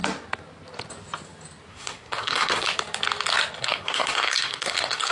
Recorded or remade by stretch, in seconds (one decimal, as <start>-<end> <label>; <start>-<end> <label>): 0.0-1.7 recorded; 1.7-2.7 remade; 2.7-3.6 recorded; 3.6-5.1 remade